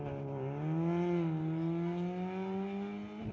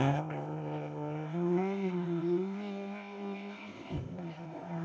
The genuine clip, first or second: first